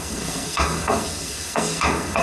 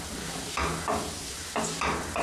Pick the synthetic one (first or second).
first